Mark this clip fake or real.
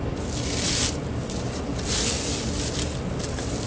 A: real